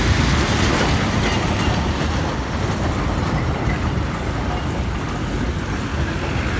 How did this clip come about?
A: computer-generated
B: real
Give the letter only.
B